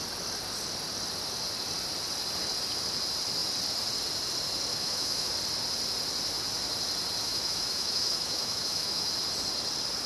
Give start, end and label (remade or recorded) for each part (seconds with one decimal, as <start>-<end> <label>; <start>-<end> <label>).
0.0-4.7 recorded; 4.7-5.3 remade; 5.3-7.2 recorded; 7.2-9.1 remade; 9.1-10.1 recorded